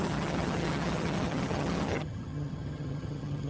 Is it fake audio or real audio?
fake